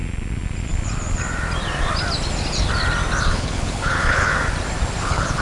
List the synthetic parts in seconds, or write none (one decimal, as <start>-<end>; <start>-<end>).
3.2-4.3; 5.0-5.4